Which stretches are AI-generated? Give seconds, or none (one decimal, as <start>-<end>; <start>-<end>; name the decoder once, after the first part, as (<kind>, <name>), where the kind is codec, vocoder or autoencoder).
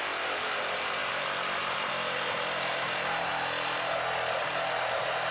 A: 0.0-3.3 (vocoder, BigVGAN v2)